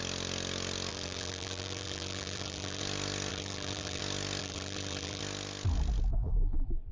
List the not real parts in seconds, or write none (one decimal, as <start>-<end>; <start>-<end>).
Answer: 0.9-2.8; 3.3-4.0; 4.4-5.2